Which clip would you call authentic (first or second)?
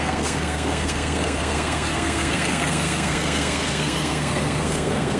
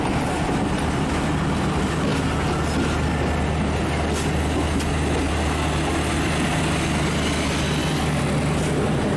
second